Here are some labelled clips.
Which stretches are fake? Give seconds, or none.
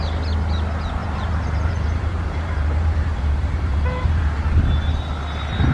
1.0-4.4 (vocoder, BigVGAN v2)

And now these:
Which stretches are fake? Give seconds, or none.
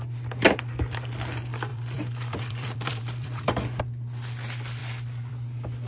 1.7-3.8 (vocoder, BigVGAN v2)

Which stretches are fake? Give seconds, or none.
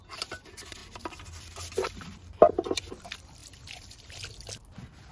none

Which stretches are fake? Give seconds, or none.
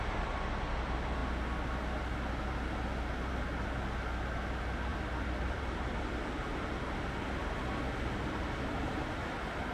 4.9-6.2 (vocoder, BigVGAN v2)